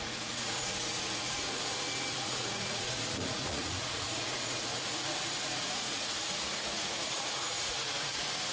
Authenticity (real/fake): fake